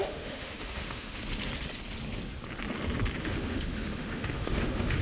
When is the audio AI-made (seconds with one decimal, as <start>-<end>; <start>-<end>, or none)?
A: 0.0-1.2; 3.2-5.0